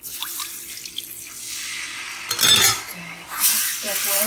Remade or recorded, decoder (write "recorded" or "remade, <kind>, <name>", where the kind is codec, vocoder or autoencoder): recorded